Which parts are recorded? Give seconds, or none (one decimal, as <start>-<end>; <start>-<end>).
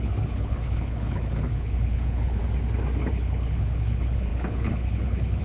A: 2.4-3.1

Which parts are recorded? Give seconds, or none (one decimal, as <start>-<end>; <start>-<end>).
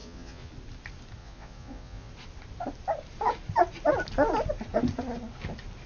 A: 0.5-1.2; 2.1-5.9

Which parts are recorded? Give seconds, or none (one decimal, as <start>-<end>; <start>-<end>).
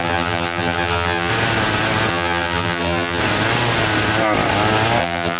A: 1.3-2.1; 3.2-5.0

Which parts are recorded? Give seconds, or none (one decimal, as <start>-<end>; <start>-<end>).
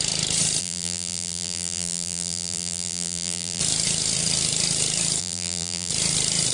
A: 0.0-0.6; 3.6-5.2; 5.9-6.5